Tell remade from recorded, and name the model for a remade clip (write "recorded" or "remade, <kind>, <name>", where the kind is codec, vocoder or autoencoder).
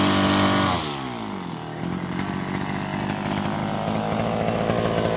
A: recorded